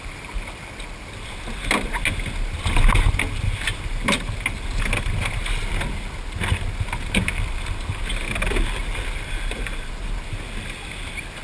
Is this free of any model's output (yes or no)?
yes